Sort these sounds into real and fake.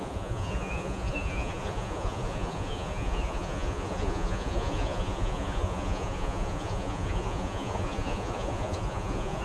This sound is fake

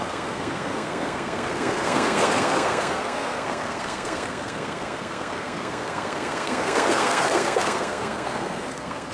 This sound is fake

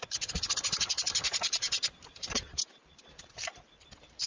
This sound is fake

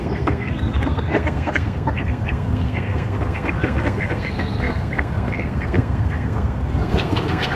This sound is fake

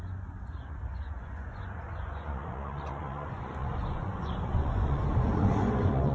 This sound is fake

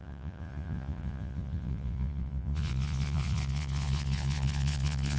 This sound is fake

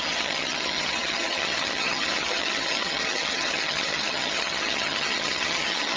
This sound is fake